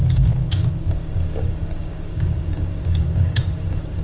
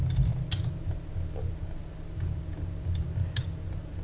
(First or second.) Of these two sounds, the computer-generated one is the first